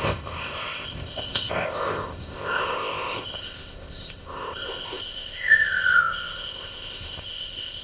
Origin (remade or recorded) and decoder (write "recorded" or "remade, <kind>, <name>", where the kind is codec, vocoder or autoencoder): remade, codec, ZipCodec